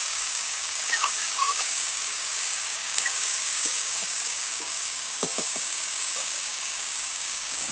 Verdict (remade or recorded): remade